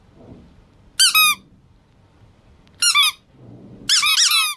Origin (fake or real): real